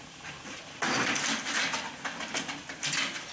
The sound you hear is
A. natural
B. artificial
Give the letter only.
A